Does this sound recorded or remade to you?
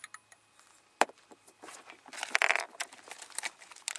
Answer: recorded